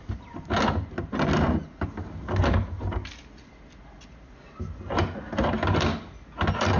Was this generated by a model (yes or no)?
no